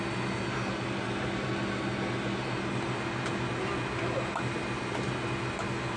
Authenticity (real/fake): real